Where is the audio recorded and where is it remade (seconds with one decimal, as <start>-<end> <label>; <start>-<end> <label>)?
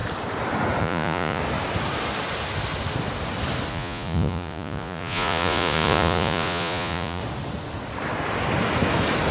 0.0-0.8 recorded; 0.8-1.4 remade; 1.4-3.7 recorded; 3.7-7.2 remade; 7.2-9.3 recorded